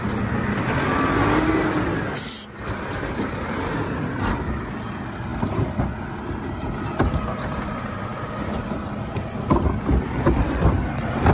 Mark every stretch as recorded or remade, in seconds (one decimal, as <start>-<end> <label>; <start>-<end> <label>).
0.0-11.3 recorded